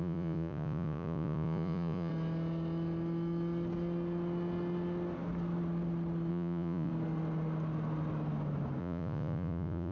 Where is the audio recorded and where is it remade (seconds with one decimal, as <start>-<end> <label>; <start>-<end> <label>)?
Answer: 0.0-2.1 remade; 2.1-6.3 recorded; 6.3-6.9 remade; 6.9-8.8 recorded; 8.8-9.9 remade